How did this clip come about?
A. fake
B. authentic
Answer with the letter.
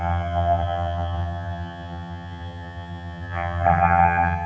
A